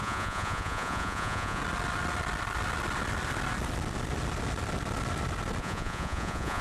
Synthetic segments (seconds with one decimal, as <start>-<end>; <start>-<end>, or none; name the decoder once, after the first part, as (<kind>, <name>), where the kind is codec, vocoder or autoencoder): 0.0-1.6 (vocoder, Vocos); 5.6-6.6